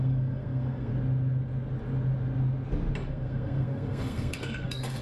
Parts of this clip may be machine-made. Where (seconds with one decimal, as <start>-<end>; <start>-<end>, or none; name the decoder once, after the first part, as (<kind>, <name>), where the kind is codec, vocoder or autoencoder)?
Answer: 0.0-0.9 (codec, SNAC); 3.1-5.0